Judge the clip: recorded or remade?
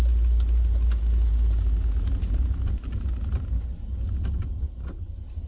recorded